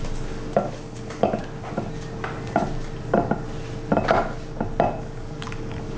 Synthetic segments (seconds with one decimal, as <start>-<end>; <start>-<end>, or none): 0.0-1.4; 5.0-6.0